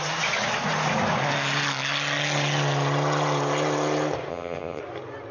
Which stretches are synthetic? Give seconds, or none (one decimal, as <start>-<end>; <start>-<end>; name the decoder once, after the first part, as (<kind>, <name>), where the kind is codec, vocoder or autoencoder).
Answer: 4.3-4.8 (vocoder, HiFi-GAN)